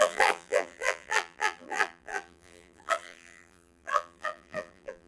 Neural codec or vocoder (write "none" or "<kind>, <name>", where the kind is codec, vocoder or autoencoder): vocoder, BigVGAN v2